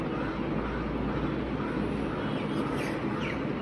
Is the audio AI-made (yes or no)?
no